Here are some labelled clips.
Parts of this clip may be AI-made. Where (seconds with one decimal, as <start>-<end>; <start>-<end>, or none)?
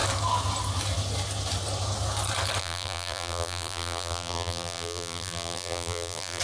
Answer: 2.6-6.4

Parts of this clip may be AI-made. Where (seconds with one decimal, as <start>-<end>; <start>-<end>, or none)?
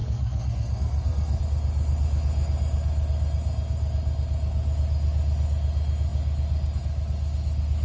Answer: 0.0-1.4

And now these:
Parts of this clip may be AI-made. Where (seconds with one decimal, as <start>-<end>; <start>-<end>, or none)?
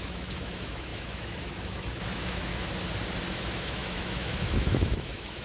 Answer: 0.0-2.5; 3.3-5.4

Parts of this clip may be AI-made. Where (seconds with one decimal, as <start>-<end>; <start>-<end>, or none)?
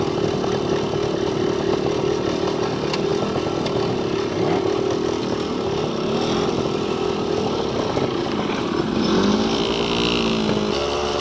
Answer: none